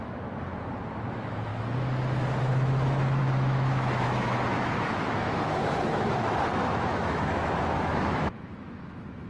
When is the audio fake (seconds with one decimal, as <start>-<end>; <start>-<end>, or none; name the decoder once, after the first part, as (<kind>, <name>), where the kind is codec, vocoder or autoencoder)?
0.0-0.5 (autoencoder, DAC-VAE); 1.1-1.5; 2.4-9.3